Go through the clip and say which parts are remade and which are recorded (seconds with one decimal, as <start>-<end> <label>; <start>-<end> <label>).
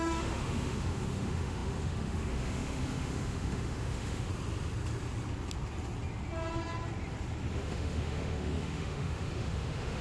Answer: 0.0-4.3 remade; 4.3-7.5 recorded; 7.5-10.0 remade